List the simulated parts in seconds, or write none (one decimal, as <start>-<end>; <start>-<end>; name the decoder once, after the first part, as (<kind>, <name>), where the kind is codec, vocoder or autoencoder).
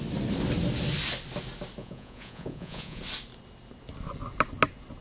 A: 1.8-3.0 (vocoder, Vocos)